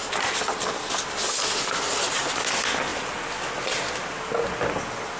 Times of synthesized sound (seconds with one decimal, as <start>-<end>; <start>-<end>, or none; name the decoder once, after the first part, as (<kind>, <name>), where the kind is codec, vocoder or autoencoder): none